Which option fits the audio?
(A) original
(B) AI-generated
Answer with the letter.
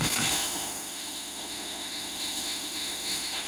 B